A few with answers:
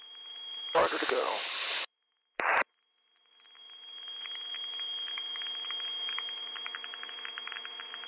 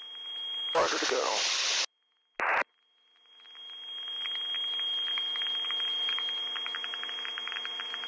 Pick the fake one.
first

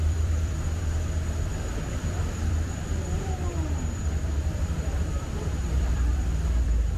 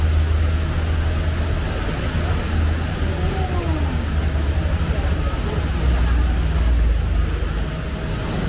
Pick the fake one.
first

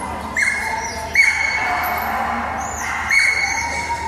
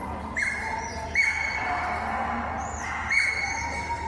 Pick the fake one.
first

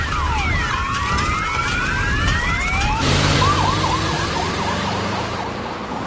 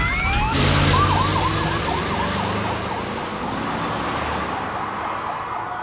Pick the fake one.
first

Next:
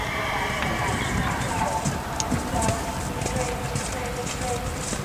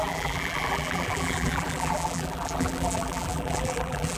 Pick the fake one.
second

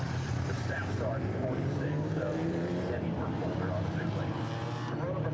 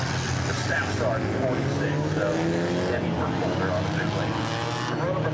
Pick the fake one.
first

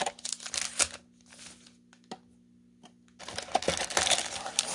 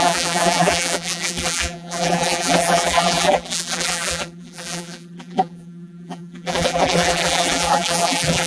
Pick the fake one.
second